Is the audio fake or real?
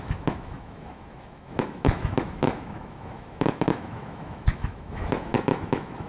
fake